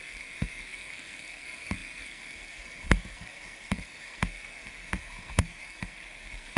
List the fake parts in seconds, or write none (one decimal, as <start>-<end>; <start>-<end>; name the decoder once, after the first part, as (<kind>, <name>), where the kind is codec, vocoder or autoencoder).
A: 0.0-6.6 (codec, SNAC)